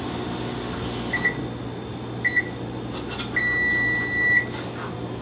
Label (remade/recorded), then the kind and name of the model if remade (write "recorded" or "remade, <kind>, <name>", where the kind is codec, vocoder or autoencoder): recorded